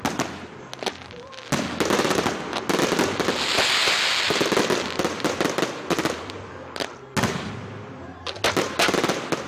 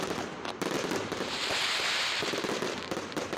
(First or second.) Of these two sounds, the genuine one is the first